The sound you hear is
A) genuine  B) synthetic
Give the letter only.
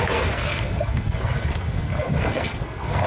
B